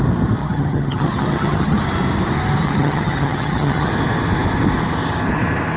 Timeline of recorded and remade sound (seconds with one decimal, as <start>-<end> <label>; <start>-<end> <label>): 0.0-0.4 recorded; 0.4-1.8 remade; 1.8-2.6 recorded; 2.6-3.9 remade; 3.9-5.8 recorded